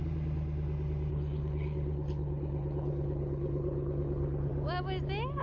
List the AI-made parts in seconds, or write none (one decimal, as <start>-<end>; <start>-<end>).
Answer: 1.1-4.5